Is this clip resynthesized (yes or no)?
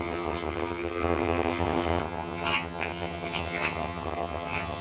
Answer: yes